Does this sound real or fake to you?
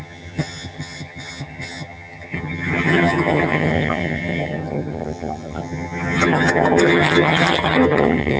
fake